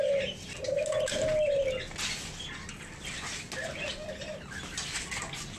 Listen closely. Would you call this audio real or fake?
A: real